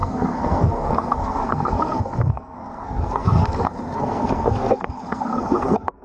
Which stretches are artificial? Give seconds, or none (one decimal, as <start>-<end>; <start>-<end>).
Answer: 0.0-6.0